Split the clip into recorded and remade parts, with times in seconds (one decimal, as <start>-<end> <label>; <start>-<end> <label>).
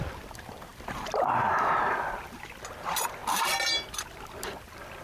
0.0-5.0 recorded